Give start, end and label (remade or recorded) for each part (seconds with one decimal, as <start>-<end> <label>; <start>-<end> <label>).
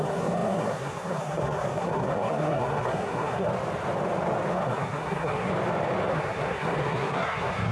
0.0-3.5 remade; 3.5-4.5 recorded; 4.5-5.5 remade; 5.5-6.1 recorded; 6.1-7.7 remade